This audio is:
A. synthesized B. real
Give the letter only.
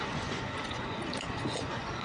A